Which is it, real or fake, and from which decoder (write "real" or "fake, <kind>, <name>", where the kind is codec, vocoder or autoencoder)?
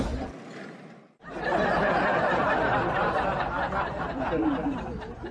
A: real